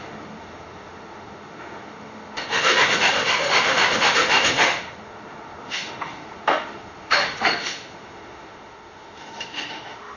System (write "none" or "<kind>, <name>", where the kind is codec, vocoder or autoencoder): autoencoder, DAC-VAE